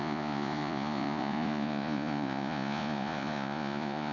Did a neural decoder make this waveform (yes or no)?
yes